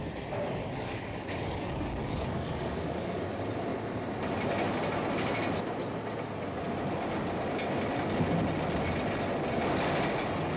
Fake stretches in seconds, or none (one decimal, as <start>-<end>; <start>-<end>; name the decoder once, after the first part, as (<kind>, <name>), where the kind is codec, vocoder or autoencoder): 0.6-3.2 (codec, DAC)